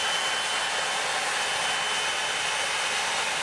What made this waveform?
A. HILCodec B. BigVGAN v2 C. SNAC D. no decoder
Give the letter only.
D